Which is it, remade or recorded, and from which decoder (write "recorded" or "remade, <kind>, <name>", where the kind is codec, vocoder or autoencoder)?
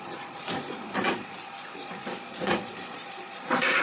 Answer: remade, vocoder, Vocos